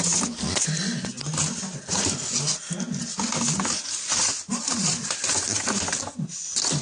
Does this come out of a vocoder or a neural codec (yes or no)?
no